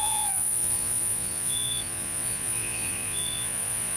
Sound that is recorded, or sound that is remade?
remade